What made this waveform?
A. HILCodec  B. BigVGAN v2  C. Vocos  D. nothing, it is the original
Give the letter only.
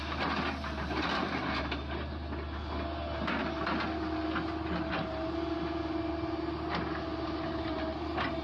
D